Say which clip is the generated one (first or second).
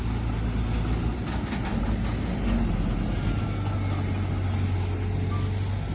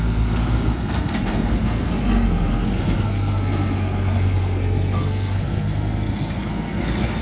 second